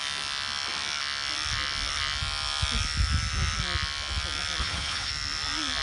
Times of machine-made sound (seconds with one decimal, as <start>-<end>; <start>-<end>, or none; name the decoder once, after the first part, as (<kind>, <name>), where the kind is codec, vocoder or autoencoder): 4.6-5.1 (codec, HILCodec)